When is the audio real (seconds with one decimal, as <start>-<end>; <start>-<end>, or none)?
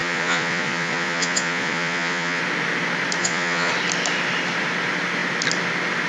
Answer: 2.4-3.2; 3.7-6.1